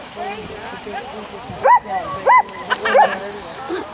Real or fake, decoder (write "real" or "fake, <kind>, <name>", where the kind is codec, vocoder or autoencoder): real